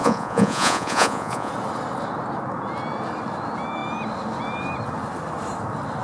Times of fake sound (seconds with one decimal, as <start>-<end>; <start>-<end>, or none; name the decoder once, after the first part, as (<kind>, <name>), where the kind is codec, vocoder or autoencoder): 0.0-1.5 (vocoder, Vocos)